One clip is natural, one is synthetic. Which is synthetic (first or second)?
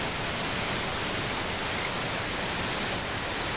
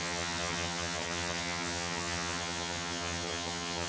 second